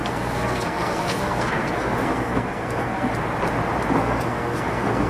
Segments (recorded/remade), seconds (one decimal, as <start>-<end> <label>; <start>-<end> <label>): 0.0-3.1 remade; 3.1-4.0 recorded; 4.0-5.1 remade